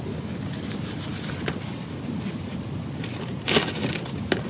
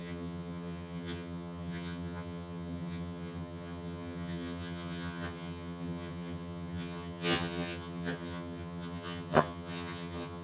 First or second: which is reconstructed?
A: second